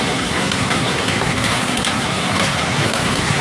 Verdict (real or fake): fake